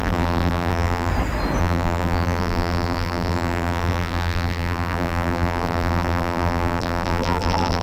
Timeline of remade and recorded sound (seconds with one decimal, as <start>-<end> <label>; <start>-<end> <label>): 0.0-1.1 remade; 1.1-1.6 recorded; 1.6-7.8 remade